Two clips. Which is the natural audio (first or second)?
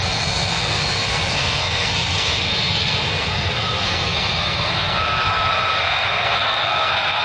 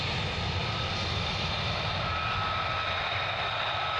second